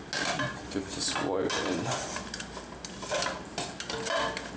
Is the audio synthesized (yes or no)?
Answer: no